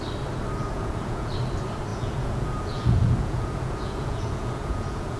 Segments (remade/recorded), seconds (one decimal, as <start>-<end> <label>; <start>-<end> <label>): 0.0-0.6 recorded; 0.6-1.3 remade; 1.3-1.9 recorded; 1.9-5.2 remade